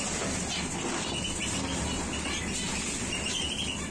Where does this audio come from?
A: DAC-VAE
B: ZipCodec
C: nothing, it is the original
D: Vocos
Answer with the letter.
C